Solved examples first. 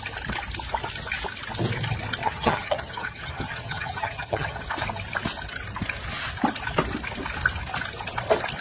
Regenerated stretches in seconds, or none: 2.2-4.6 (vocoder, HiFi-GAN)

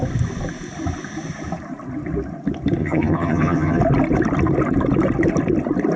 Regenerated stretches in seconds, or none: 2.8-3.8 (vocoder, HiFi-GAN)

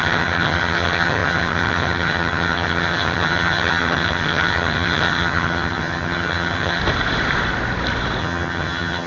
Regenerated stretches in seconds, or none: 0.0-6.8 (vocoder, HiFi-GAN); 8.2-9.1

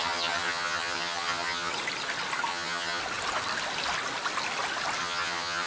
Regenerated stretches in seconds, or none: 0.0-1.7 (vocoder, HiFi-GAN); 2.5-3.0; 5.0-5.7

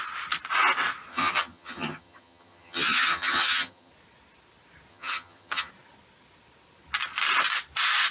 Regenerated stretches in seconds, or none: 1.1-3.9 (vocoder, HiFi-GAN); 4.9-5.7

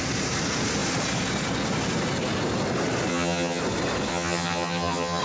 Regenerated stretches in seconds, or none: 3.1-3.6 (vocoder, HiFi-GAN); 4.1-5.2

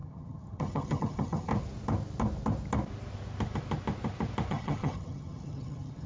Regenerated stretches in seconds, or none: 0.0-1.5 (vocoder, HiFi-GAN); 4.5-6.1